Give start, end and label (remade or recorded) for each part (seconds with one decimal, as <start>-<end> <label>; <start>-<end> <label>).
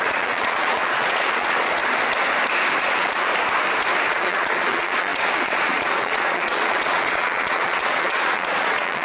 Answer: 0.0-1.8 remade; 1.8-2.8 recorded; 2.8-3.3 remade; 3.3-4.1 recorded; 4.1-9.0 remade